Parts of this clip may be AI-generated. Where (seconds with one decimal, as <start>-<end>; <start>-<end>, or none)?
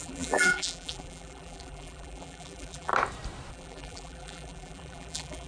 0.0-2.9; 3.5-5.5